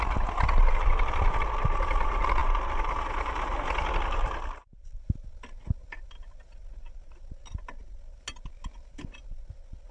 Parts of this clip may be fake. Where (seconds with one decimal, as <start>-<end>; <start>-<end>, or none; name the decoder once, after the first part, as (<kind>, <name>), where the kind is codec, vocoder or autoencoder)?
none